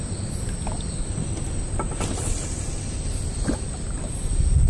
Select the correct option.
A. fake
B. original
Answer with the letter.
B